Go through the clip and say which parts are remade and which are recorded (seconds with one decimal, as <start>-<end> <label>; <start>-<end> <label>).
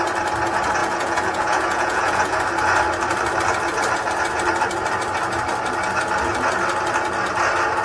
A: 0.0-0.8 recorded; 0.8-2.4 remade; 2.4-7.8 recorded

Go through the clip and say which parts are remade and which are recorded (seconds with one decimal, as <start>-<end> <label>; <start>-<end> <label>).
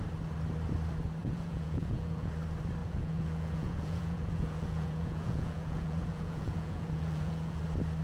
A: 0.0-1.2 recorded; 1.2-2.3 remade; 2.3-2.8 recorded; 2.8-7.6 remade; 7.6-8.0 recorded